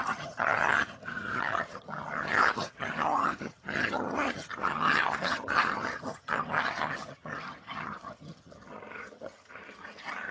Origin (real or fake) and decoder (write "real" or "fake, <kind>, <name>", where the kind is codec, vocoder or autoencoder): fake, vocoder, HiFi-GAN